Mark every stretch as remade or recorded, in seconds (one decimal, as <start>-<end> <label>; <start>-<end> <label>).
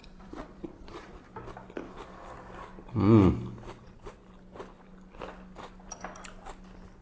0.0-1.2 remade; 1.2-3.8 recorded; 3.8-4.2 remade; 4.2-7.0 recorded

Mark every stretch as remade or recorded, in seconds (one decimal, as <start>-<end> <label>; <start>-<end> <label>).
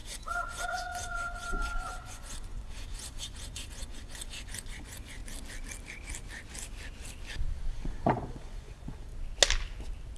0.0-5.2 remade; 5.2-7.7 recorded; 7.7-9.1 remade; 9.1-10.2 recorded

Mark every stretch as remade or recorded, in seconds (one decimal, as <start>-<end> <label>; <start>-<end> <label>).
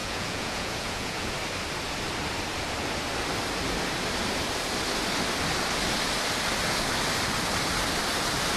0.0-1.3 remade; 1.3-8.6 recorded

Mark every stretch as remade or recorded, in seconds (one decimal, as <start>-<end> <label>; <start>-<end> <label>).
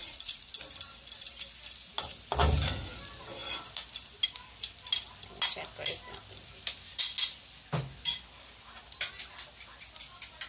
0.0-0.5 remade; 0.5-10.5 recorded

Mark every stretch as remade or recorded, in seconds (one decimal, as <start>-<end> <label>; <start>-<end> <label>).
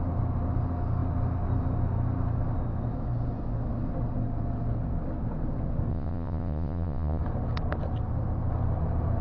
0.0-5.9 recorded; 5.9-7.2 remade; 7.2-9.2 recorded